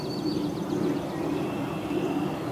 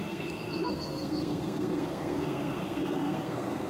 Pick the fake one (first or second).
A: second